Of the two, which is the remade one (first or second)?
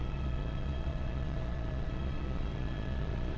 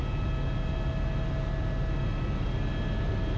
first